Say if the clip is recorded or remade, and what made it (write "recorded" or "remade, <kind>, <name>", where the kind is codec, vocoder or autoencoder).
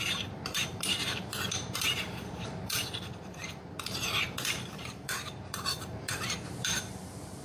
remade, vocoder, BigVGAN v2